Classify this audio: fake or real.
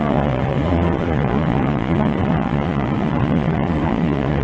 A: fake